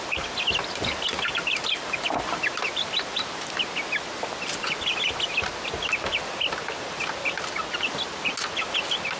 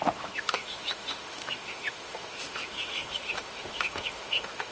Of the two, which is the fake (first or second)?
second